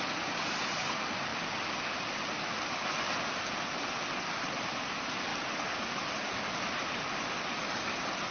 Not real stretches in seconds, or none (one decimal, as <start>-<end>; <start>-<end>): none